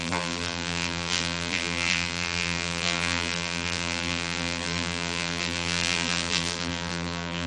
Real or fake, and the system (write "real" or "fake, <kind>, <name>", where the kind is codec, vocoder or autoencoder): fake, vocoder, BigVGAN v2